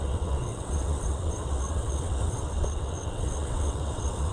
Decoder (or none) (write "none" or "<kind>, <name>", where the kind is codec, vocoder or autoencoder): vocoder, WaveNeXt